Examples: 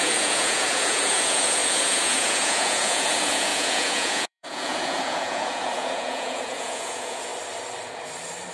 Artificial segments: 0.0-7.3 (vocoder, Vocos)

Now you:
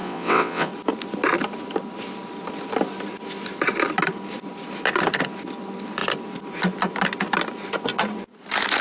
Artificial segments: 0.0-0.7 (vocoder, WaveNeXt)

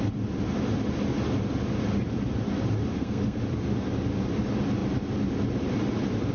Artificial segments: 2.9-3.4 (codec, SNAC)

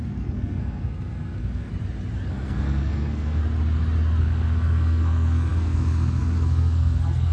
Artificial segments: 0.0-1.7 (codec, SNAC); 2.3-3.4; 4.2-7.3

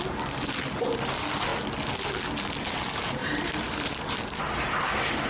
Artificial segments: 3.2-4.3 (vocoder, BigVGAN v2)

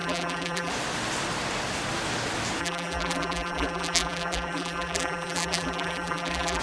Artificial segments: 0.0-0.7 (vocoder, BigVGAN v2); 2.6-6.6